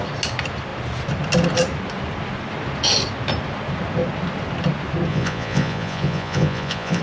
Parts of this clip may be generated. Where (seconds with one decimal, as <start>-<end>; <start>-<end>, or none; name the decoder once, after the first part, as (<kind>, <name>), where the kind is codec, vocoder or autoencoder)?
5.1-7.0 (vocoder, Vocos)